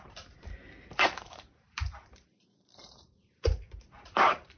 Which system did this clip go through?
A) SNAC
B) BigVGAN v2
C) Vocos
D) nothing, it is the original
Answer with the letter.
B